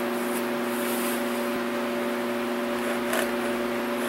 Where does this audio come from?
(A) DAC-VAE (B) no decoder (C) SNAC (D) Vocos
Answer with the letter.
B